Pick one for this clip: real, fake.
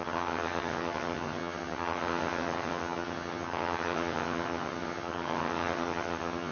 fake